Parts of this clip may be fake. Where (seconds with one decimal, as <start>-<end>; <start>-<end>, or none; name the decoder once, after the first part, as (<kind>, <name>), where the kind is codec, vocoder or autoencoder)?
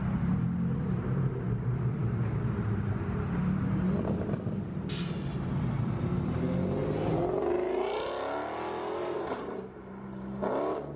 9.0-9.6 (vocoder, BigVGAN v2)